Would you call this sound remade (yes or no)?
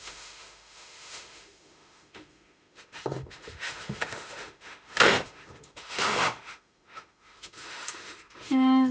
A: yes